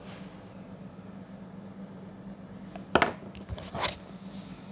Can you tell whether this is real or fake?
real